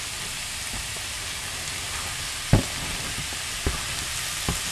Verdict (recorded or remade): recorded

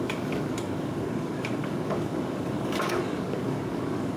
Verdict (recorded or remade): remade